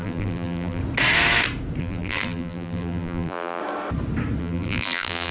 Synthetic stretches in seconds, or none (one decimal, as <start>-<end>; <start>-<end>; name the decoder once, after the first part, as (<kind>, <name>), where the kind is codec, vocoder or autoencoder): 0.0-0.8 (vocoder, BigVGAN v2); 1.8-3.6; 4.4-5.3